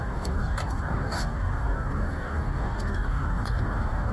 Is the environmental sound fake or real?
fake